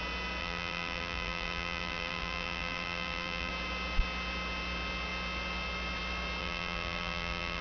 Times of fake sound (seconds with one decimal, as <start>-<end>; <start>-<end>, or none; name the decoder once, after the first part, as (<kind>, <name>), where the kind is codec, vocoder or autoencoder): 0.4-3.5 (vocoder, BigVGAN v2); 6.4-7.6